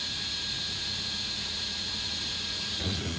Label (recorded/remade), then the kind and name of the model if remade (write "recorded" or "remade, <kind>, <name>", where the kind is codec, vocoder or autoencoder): remade, vocoder, Vocos